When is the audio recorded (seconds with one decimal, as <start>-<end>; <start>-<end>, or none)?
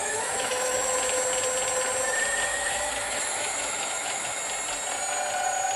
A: 0.9-2.5; 4.4-5.8